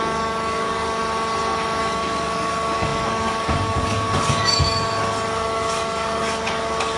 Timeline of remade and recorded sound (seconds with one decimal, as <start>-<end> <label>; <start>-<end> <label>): 0.0-1.0 remade; 1.0-1.8 recorded; 1.8-7.0 remade